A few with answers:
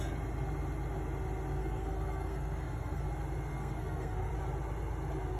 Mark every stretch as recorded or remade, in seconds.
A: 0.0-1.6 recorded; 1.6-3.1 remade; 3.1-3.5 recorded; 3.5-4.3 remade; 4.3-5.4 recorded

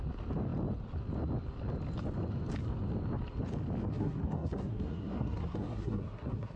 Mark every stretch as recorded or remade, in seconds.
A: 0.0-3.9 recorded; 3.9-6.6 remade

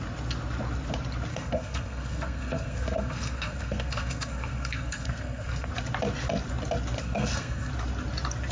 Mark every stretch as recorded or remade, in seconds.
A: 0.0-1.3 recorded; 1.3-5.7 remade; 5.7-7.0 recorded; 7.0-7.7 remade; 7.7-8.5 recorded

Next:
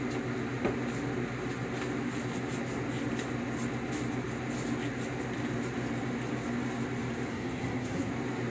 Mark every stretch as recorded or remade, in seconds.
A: 0.0-7.3 recorded; 7.3-8.1 remade; 8.1-8.5 recorded